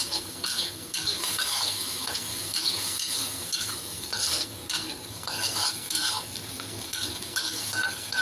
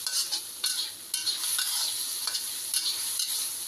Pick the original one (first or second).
second